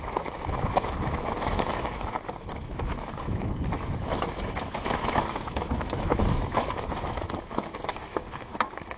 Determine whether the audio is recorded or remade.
remade